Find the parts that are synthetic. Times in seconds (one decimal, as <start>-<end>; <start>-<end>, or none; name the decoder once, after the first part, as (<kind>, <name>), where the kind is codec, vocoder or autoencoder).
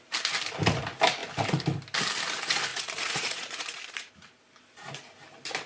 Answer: 2.7-4.1 (vocoder, Vocos)